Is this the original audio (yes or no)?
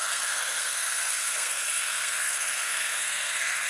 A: no